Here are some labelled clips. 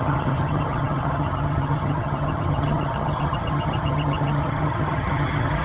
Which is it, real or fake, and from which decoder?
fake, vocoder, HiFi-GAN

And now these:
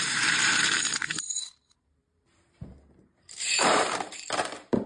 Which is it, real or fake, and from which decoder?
fake, vocoder, BigVGAN v2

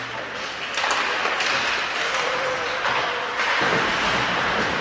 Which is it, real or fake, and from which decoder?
real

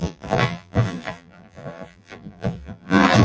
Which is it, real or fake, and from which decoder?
fake, vocoder, BigVGAN v2